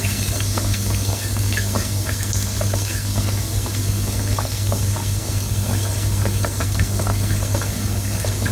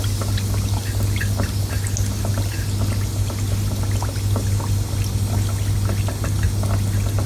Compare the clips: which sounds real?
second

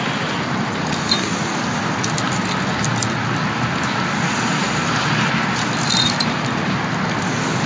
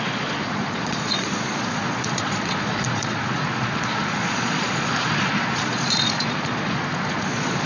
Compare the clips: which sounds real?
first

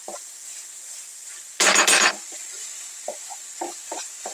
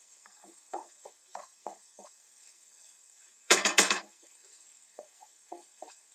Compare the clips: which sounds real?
first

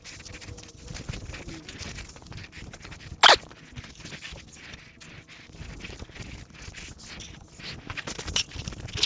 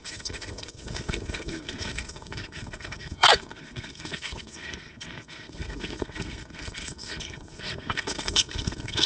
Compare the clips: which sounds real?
first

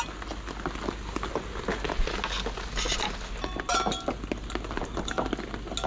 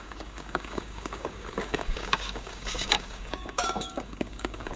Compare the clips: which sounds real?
first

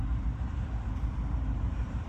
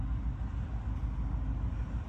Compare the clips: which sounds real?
second